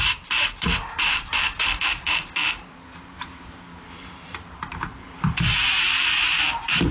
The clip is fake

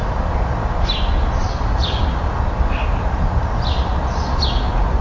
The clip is real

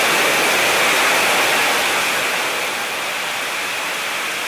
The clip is real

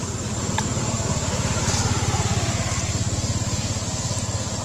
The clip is real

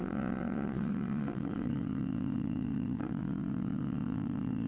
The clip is fake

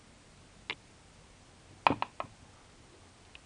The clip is real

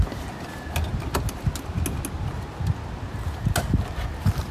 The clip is real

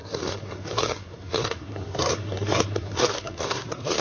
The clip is fake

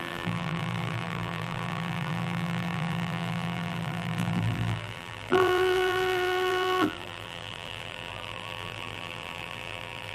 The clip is fake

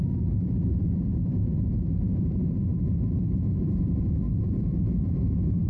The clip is fake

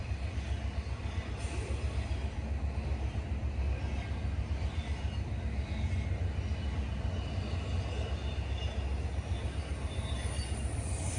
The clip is real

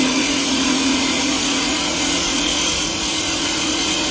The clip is fake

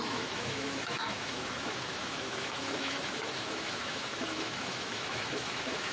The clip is fake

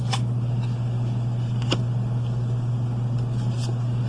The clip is real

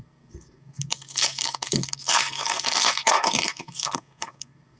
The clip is fake